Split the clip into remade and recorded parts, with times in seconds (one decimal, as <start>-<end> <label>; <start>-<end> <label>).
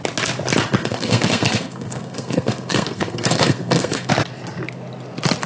0.0-0.8 recorded; 0.8-4.1 remade; 4.1-5.5 recorded